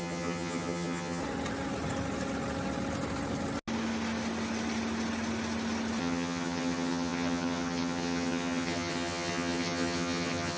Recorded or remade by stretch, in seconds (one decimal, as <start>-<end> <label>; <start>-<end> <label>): 0.0-1.2 remade; 1.2-6.0 recorded; 6.0-10.6 remade